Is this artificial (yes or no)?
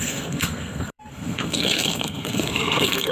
yes